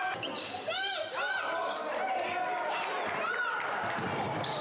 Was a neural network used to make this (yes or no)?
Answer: no